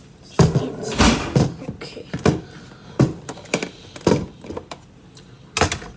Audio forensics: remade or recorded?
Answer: recorded